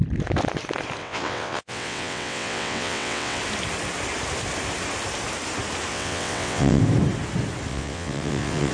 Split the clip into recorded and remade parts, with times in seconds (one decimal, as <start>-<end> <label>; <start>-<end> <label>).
0.0-1.0 recorded; 1.0-3.4 remade; 3.4-5.9 recorded; 5.9-6.8 remade; 6.8-7.7 recorded; 7.7-8.7 remade